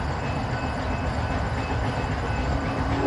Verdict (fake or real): real